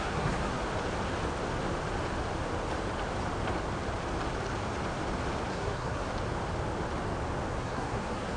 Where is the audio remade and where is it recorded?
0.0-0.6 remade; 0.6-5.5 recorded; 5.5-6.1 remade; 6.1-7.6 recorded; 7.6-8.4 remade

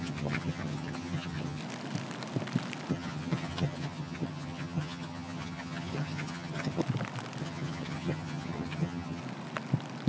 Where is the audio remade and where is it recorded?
0.0-1.6 remade; 1.6-2.9 recorded; 2.9-6.8 remade; 6.8-7.4 recorded; 7.4-9.2 remade; 9.2-10.1 recorded

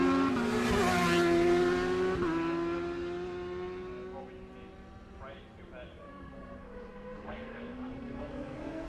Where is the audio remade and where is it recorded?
0.0-5.9 recorded; 5.9-8.9 remade

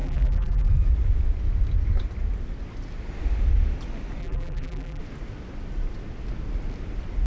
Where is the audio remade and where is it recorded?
0.0-0.7 remade; 0.7-4.2 recorded; 4.2-5.0 remade; 5.0-7.3 recorded

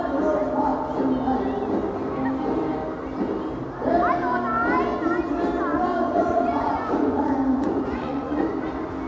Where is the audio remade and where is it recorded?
0.0-5.7 recorded; 5.7-8.4 remade; 8.4-9.1 recorded